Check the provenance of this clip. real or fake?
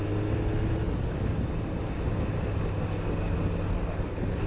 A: real